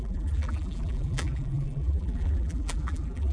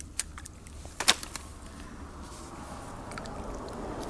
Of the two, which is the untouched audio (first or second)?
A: second